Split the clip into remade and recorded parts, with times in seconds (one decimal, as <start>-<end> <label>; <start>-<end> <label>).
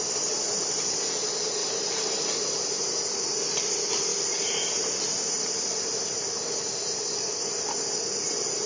0.0-1.6 recorded; 1.6-2.2 remade; 2.2-8.7 recorded